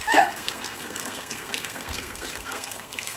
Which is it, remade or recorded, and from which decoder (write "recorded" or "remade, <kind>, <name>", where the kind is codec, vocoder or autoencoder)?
remade, codec, SNAC